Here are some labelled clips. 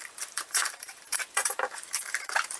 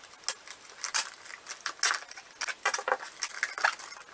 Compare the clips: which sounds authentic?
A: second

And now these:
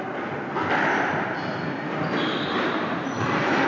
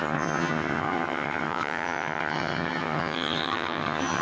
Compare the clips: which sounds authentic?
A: first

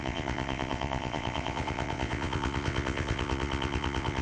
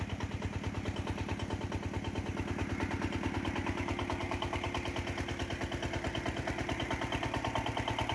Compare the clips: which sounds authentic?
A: second